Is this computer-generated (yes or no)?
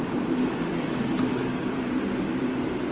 no